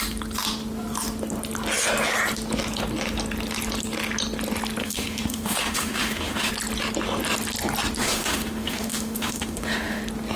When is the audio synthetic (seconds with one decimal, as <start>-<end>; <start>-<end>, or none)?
4.8-6.5; 8.0-10.0